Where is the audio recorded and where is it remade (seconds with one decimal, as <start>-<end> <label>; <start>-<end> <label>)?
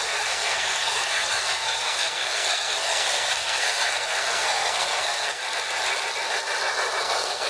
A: 0.0-5.4 remade; 5.4-7.0 recorded; 7.0-7.5 remade